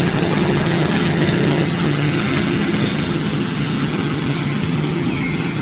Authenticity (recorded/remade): remade